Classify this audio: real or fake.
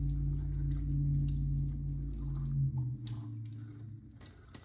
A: real